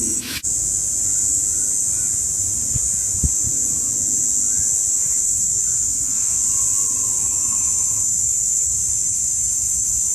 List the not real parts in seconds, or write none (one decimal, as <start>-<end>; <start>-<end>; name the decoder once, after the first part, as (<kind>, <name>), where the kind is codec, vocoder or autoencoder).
0.0-0.4 (autoencoder, DAC-VAE); 4.9-6.4; 7.1-10.1